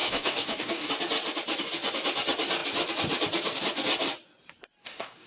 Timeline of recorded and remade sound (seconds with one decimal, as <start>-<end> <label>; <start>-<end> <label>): 0.0-0.9 remade; 0.9-4.8 recorded; 4.8-5.3 remade